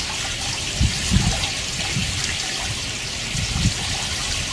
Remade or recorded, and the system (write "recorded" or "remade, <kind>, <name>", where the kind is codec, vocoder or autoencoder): recorded